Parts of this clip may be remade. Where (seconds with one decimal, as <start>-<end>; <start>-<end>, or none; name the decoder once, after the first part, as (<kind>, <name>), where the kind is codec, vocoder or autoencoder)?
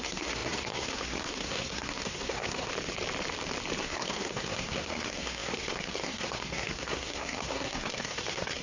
0.0-2.7 (codec, SNAC); 3.8-8.6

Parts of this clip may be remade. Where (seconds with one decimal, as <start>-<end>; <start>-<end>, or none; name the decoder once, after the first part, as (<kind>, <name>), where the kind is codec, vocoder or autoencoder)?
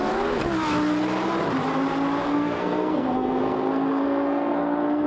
2.2-5.1 (codec, SNAC)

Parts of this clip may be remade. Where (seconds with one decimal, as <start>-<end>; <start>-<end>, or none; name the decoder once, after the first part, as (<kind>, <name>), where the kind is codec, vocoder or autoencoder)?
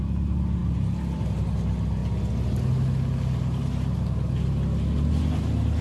none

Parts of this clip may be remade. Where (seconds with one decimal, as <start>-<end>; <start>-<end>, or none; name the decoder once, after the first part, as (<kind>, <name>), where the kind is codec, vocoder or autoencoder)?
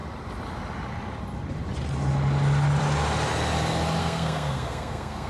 4.0-5.3 (codec, SNAC)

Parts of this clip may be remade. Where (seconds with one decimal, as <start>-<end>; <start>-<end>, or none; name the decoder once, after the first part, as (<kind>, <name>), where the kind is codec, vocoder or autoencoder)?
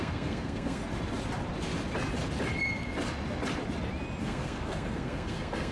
0.0-0.8 (codec, SNAC); 4.2-5.7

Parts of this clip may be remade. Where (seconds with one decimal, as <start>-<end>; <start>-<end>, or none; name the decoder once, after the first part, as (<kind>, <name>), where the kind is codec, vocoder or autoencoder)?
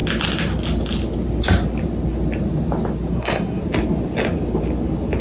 3.1-3.6 (codec, SNAC)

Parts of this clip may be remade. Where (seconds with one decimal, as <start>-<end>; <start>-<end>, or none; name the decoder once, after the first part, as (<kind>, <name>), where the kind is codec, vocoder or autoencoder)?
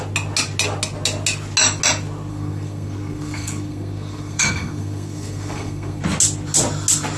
2.3-6.0 (codec, SNAC)